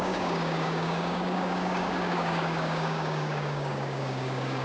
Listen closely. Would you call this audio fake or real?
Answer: fake